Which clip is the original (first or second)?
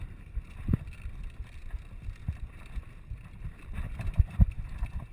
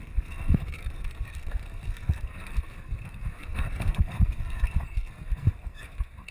first